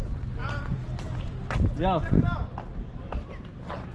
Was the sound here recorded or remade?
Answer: recorded